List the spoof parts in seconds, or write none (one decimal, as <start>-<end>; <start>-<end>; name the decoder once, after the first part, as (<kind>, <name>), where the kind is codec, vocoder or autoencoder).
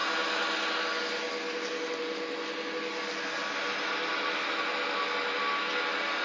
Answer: none